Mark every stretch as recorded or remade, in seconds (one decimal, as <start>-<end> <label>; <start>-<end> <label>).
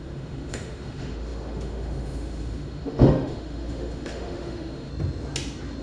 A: 0.0-4.9 remade; 4.9-5.8 recorded